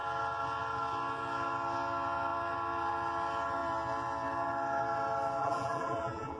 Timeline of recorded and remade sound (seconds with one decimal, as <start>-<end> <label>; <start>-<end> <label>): 0.0-5.4 recorded; 5.4-6.4 remade